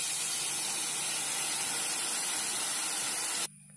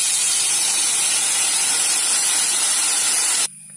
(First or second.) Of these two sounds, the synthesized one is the second